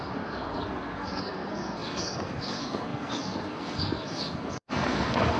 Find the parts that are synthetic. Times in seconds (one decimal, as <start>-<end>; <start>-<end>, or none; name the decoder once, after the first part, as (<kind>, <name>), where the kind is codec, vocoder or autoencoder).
0.0-5.4 (codec, SNAC)